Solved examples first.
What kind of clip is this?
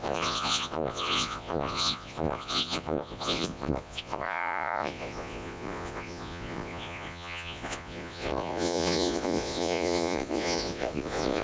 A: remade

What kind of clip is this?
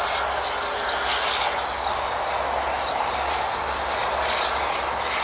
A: recorded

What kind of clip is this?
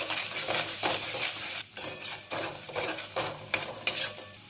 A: remade